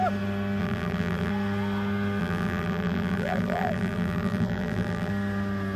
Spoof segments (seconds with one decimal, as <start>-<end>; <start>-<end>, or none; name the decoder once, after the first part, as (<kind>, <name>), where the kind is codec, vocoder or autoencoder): 0.6-1.3 (vocoder, BigVGAN v2); 2.2-5.1